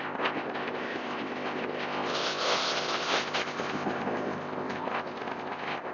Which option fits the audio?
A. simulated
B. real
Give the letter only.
A